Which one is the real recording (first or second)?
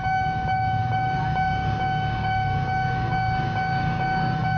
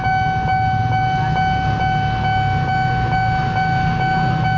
second